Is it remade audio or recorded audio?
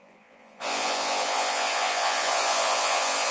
remade